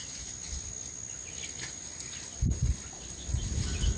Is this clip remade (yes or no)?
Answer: no